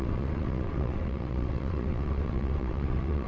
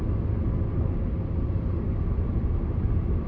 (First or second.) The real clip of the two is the second